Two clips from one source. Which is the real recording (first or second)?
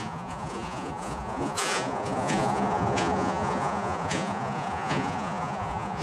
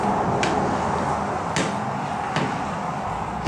second